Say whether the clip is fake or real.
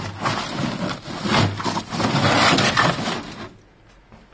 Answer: real